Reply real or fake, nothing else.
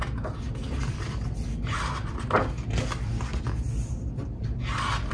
real